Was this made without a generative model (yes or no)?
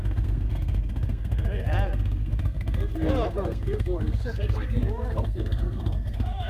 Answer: no